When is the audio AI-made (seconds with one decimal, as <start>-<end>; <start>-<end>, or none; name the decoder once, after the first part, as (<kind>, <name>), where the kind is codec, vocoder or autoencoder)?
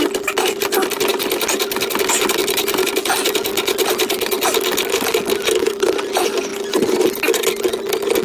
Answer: none